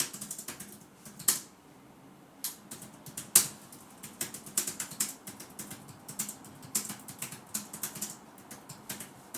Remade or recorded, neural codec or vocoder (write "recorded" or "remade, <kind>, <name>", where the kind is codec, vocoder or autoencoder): recorded